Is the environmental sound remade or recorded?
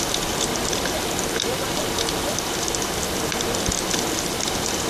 recorded